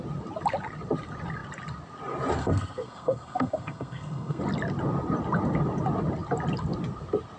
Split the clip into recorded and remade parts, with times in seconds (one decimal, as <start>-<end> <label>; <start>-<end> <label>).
0.0-2.4 recorded; 2.4-4.4 remade; 4.4-7.4 recorded